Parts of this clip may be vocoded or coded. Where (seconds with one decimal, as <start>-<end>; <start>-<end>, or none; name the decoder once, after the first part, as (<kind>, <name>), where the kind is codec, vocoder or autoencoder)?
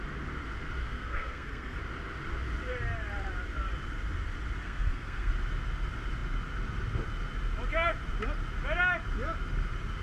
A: 0.8-1.8 (codec, SNAC); 4.6-5.3